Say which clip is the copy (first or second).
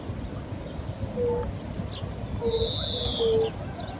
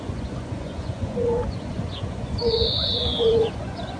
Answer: second